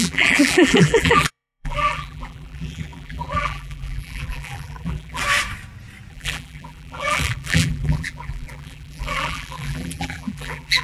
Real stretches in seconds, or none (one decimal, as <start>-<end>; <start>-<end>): 5.2-6.1